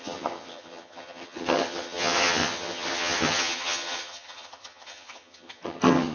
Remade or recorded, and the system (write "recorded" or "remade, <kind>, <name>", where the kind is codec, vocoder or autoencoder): remade, vocoder, HiFi-GAN